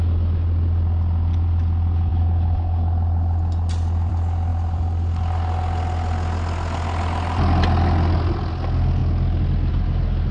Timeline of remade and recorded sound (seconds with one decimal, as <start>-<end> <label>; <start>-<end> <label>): 0.0-10.3 recorded